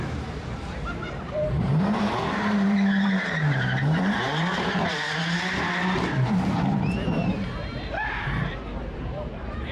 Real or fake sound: fake